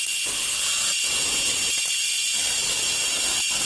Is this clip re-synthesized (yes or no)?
no